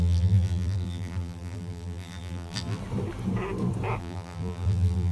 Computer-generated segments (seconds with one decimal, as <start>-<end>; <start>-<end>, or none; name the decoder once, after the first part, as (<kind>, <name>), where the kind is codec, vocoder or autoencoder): 0.0-2.8 (vocoder, BigVGAN v2); 4.0-5.1